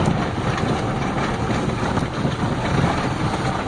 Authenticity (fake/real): real